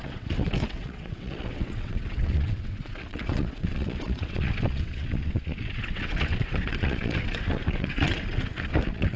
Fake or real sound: fake